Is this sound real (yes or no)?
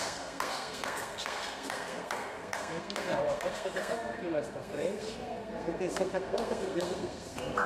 no